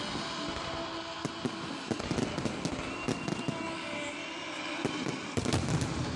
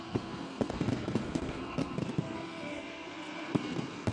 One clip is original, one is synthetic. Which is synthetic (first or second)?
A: second